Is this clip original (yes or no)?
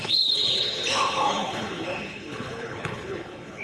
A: no